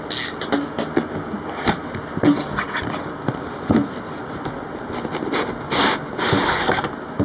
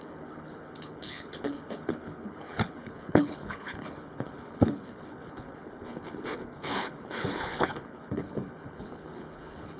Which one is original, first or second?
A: first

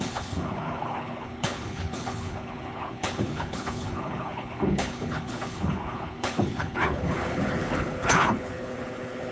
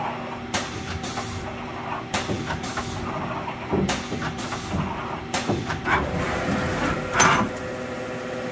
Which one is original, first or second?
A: second